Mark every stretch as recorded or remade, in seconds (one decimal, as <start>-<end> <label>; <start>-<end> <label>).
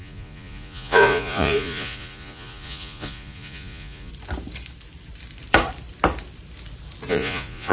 0.0-4.1 remade; 4.1-7.1 recorded; 7.1-7.7 remade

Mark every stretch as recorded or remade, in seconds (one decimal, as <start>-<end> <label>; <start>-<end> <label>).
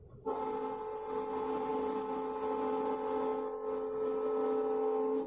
0.0-5.3 recorded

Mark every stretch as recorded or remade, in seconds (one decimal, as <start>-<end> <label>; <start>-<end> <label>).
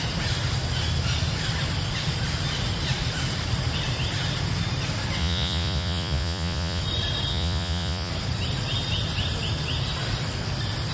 0.0-5.2 recorded; 5.2-6.8 remade; 6.8-7.3 recorded; 7.3-8.1 remade; 8.1-10.9 recorded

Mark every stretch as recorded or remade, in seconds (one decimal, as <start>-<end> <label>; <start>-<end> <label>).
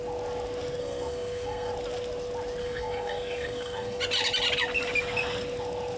0.0-0.8 recorded; 0.8-1.7 remade; 1.7-2.6 recorded; 2.6-4.0 remade; 4.0-6.0 recorded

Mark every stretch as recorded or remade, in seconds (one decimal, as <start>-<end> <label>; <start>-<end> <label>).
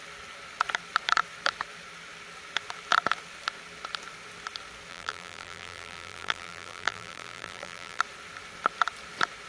0.0-4.9 recorded; 4.9-8.0 remade; 8.0-9.5 recorded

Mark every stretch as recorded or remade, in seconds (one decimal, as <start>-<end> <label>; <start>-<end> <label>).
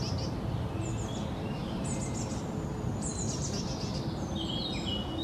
0.0-5.2 recorded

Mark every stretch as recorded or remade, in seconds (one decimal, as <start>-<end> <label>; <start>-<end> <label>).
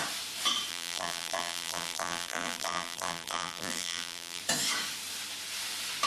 0.0-0.7 recorded; 0.7-4.4 remade; 4.4-6.1 recorded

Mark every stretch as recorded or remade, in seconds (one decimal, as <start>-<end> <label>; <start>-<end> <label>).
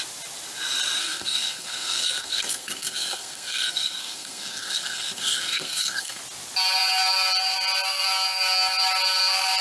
0.0-1.0 recorded; 1.0-6.2 remade; 6.2-9.6 recorded